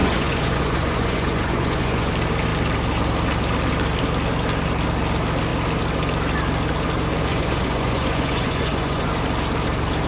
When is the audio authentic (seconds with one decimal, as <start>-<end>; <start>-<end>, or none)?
2.1-7.3; 9.1-10.1